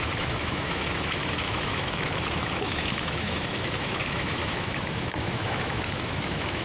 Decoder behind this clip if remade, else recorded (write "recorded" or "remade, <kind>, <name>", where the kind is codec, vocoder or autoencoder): remade, autoencoder, DAC-VAE